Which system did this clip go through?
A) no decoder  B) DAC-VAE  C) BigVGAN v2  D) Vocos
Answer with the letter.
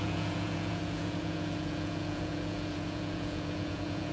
D